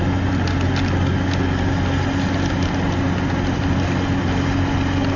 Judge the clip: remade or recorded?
recorded